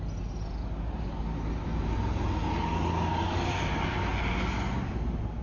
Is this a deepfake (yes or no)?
no